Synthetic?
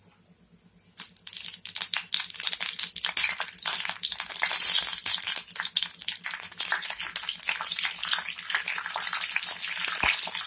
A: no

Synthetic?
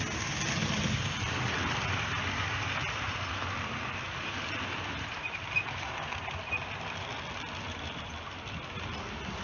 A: no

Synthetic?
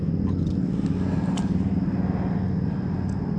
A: no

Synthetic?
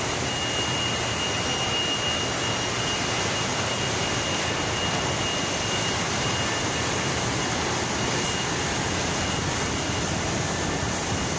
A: no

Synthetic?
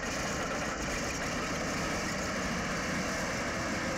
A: no